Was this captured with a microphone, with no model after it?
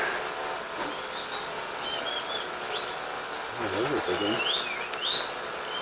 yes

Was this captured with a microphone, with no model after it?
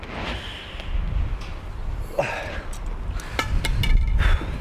yes